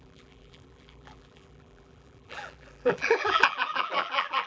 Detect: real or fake fake